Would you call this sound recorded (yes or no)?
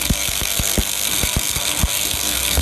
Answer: no